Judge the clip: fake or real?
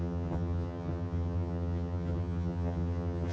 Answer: fake